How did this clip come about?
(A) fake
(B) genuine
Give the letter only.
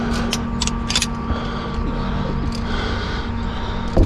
B